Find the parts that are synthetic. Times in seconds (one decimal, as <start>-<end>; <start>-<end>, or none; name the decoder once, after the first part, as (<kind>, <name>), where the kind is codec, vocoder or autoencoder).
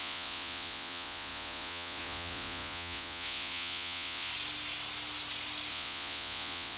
0.0-4.3 (vocoder, Vocos); 5.7-6.8